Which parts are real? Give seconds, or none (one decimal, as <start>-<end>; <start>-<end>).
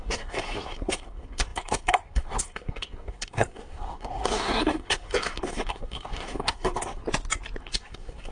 7.0-7.6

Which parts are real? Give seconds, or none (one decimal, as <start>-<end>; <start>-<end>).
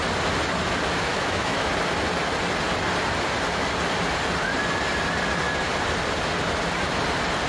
0.0-1.1; 1.7-7.5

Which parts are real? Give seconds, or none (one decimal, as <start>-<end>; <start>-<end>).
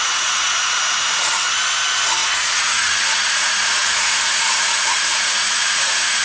0.5-2.2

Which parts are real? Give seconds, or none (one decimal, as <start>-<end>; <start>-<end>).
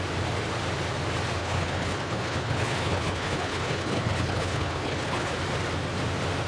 0.0-1.4; 5.3-6.5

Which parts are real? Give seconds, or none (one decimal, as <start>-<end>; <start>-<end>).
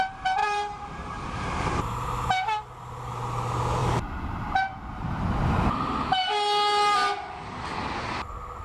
0.0-0.4; 3.1-3.8; 5.1-8.6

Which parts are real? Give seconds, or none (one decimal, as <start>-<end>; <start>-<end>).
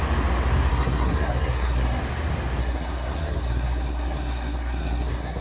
0.0-0.7; 2.0-2.6